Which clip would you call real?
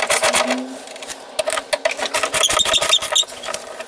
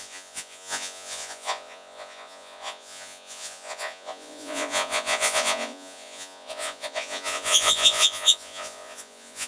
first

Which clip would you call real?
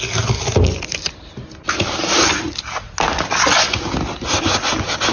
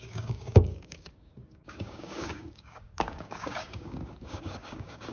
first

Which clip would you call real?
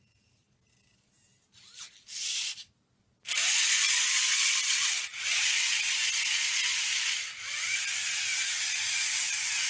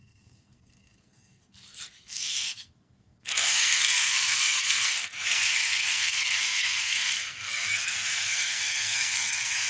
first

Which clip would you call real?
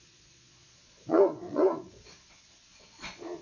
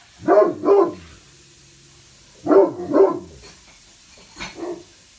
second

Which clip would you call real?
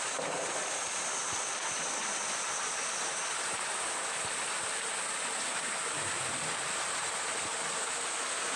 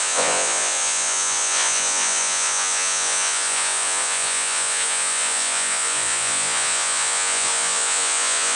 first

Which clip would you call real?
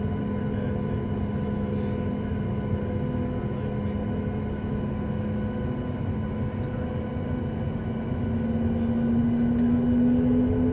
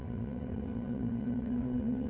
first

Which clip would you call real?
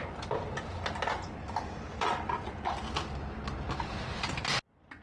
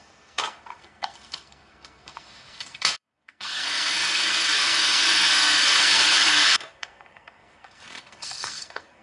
first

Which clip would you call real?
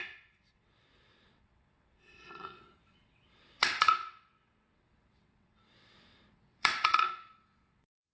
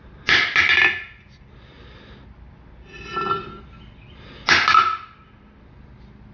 second